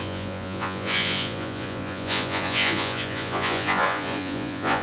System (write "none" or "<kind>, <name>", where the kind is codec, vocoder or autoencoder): vocoder, Vocos